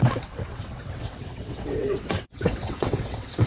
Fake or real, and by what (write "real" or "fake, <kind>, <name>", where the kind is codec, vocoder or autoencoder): fake, vocoder, WaveNeXt